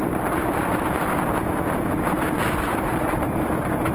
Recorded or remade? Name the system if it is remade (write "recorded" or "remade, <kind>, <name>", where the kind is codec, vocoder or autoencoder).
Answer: remade, vocoder, BigVGAN v2